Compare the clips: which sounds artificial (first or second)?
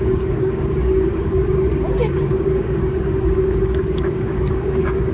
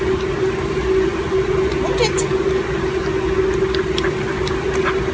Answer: first